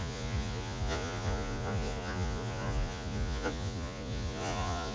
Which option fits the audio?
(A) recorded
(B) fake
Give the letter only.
B